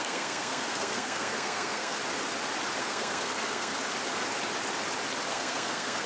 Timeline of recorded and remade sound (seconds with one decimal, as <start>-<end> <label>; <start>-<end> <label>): 0.0-2.0 remade; 2.0-2.8 recorded; 2.8-3.7 remade; 3.7-5.3 recorded; 5.3-6.1 remade